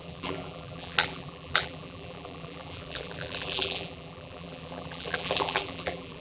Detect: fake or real fake